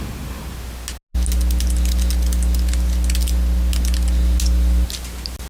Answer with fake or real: real